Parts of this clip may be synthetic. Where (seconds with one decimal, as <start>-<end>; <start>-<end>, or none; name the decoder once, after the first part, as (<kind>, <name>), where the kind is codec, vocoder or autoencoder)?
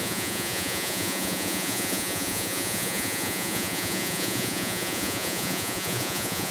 0.0-6.5 (vocoder, Vocos)